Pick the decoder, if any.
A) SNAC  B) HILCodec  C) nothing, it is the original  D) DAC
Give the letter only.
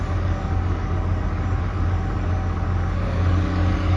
D